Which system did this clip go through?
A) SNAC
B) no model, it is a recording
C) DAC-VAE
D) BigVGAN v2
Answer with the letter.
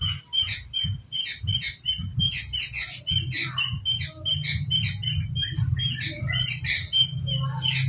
B